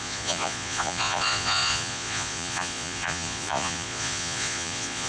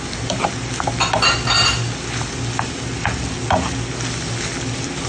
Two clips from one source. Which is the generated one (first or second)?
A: first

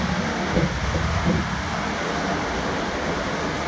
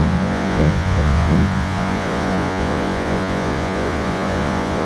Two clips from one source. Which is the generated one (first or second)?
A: second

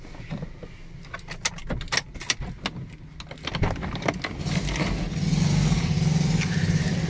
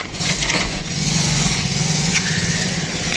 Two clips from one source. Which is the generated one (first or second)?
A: second